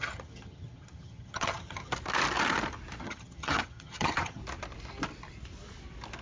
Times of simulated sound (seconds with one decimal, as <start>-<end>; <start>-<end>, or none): 0.0-1.9; 3.0-4.4